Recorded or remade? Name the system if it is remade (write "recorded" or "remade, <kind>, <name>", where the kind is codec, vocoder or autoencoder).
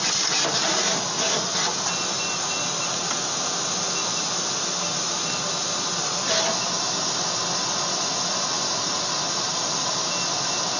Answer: recorded